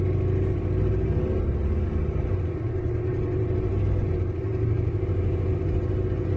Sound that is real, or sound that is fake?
real